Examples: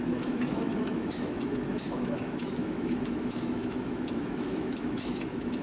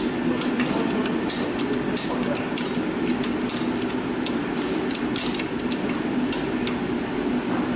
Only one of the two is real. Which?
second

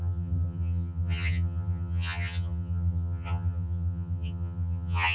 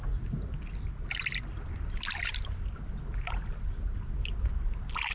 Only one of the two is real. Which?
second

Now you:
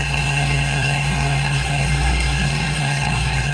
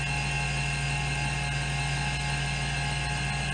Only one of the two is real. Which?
second